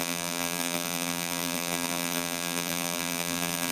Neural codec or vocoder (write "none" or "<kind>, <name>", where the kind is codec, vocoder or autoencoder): vocoder, BigVGAN v2